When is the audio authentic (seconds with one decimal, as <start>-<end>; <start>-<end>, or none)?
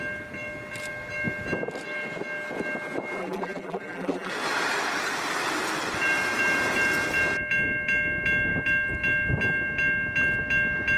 0.0-3.2; 4.3-11.0